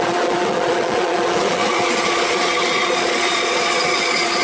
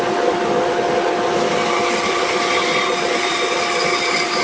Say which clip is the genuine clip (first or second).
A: second